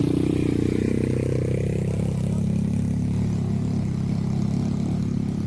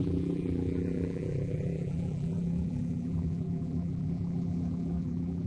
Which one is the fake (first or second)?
second